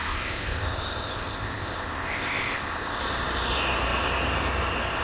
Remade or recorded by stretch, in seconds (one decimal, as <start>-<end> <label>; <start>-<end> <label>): 0.0-3.0 remade; 3.0-5.0 recorded